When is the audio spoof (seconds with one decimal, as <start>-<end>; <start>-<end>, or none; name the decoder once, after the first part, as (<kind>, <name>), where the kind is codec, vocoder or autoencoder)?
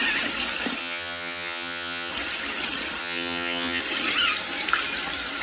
0.8-2.1 (vocoder, HiFi-GAN); 3.0-3.8